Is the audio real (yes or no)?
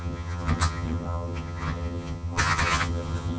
no